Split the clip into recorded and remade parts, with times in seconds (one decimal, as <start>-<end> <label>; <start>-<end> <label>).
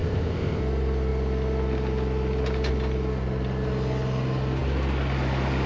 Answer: 0.0-0.6 remade; 0.6-5.7 recorded